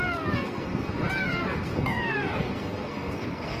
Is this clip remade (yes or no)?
yes